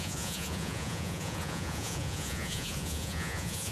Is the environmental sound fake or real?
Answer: fake